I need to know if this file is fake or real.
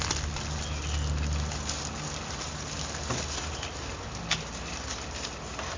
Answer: real